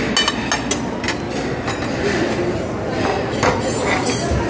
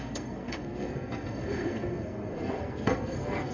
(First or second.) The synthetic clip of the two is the second